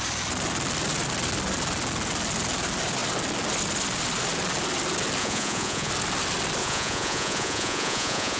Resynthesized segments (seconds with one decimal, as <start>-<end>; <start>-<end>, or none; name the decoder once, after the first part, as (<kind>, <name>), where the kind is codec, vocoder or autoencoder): 5.2-5.9 (vocoder, Vocos); 6.6-8.4